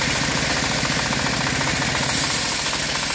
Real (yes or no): yes